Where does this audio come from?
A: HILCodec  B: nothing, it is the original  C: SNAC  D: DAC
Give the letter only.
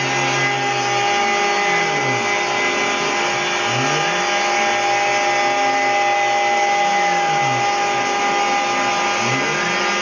B